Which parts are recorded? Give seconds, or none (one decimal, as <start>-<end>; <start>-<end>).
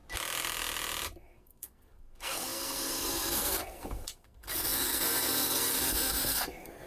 0.0-1.2